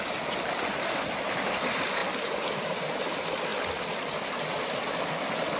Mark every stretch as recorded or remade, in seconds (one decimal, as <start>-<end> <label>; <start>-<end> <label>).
0.0-5.6 recorded